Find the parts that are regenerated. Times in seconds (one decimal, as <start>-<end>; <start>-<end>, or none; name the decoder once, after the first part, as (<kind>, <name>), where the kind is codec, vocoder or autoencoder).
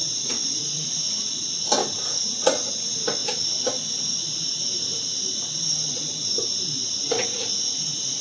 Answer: 0.0-1.0 (vocoder, Vocos); 1.8-2.8; 6.8-8.2